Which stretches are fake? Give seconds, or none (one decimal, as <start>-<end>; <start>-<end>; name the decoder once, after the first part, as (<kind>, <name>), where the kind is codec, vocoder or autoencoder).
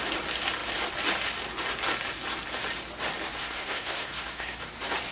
3.4-4.6 (codec, SNAC)